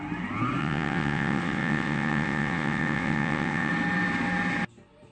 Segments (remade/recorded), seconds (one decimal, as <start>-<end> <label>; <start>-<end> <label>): 0.0-0.6 recorded; 0.6-3.7 remade; 3.7-5.1 recorded